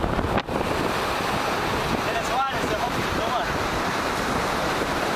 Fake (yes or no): yes